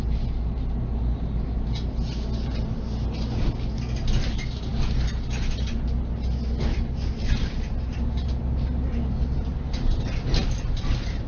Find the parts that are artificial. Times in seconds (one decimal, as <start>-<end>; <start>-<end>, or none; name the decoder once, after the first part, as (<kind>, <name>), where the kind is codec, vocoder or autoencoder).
none